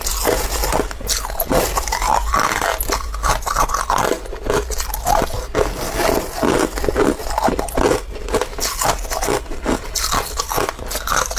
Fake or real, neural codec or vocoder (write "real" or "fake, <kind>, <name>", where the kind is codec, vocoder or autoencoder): real